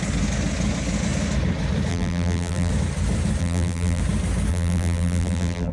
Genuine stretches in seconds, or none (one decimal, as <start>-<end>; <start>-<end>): 0.0-1.9; 2.7-3.4; 4.0-4.5